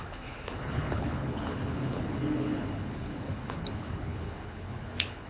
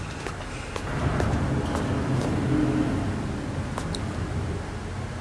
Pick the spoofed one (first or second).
first